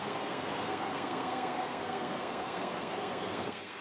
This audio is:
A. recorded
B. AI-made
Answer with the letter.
B